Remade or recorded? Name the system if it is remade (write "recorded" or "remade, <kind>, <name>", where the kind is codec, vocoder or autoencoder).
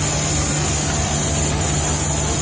recorded